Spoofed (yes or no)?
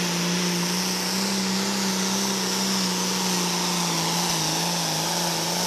no